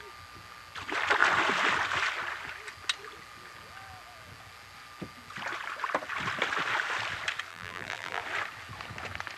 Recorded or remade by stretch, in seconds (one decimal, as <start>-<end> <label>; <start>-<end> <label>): 0.0-7.5 recorded; 7.5-8.2 remade; 8.2-9.4 recorded